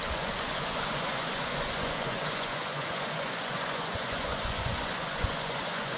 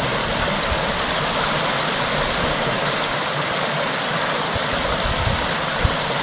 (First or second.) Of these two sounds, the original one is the second